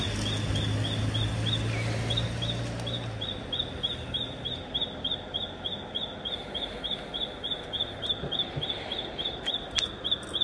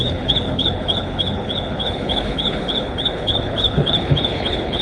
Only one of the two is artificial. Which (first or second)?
second